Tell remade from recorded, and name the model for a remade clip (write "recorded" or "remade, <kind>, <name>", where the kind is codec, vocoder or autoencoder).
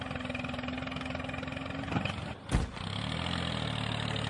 recorded